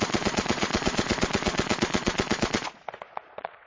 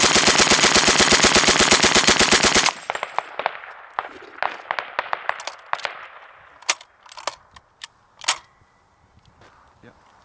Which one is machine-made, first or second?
first